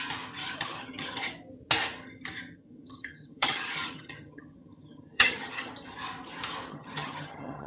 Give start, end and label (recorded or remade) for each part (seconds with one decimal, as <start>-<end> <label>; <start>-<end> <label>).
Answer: 0.0-0.4 recorded; 0.4-1.3 remade; 1.3-2.6 recorded; 2.6-5.7 remade; 5.7-6.7 recorded; 6.7-7.7 remade